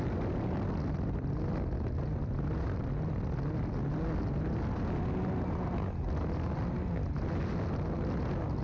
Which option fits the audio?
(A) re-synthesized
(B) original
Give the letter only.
B